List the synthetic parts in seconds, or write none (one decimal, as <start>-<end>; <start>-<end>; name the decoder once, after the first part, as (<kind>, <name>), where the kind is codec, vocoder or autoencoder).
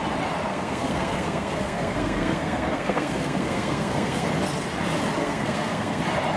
0.5-4.3 (codec, SNAC); 5.2-6.0